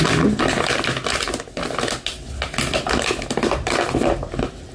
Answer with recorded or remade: recorded